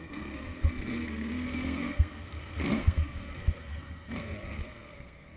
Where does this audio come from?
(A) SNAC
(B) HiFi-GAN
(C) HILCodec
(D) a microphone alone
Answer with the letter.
A